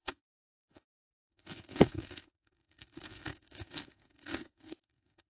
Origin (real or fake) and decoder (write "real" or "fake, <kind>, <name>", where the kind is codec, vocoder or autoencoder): fake, codec, SNAC